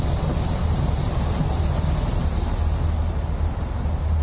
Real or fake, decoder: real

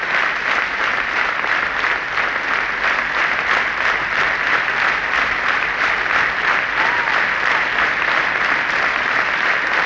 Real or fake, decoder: real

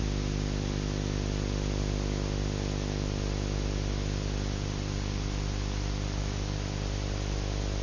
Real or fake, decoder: real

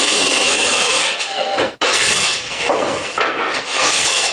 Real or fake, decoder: fake, codec, SNAC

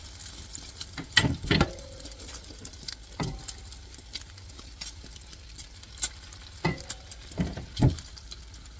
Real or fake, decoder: fake, vocoder, BigVGAN v2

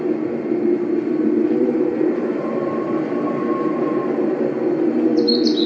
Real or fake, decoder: fake, vocoder, BigVGAN v2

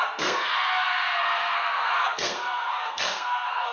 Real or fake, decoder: fake, codec, SNAC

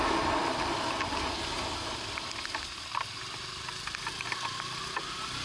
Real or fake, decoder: real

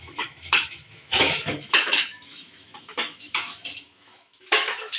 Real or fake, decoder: fake, autoencoder, DAC-VAE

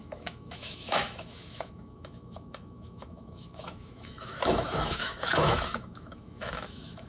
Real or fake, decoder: fake, autoencoder, DAC-VAE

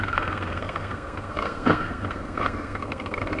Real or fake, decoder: fake, codec, SNAC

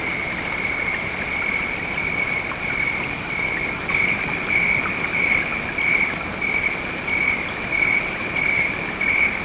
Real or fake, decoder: real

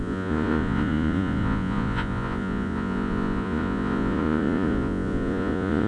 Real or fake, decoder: fake, vocoder, Vocos